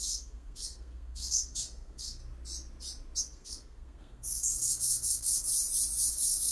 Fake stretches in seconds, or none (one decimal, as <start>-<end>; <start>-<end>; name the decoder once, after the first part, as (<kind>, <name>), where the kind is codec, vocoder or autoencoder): 0.0-2.2 (codec, SNAC); 3.2-5.5; 6.1-6.5